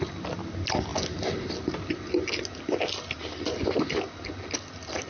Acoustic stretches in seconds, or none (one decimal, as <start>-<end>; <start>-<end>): 0.0-5.1